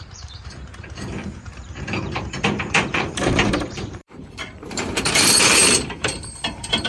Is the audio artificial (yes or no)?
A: yes